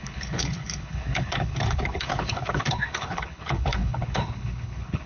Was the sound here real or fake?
fake